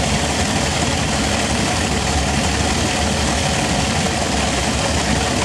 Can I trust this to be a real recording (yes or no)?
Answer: yes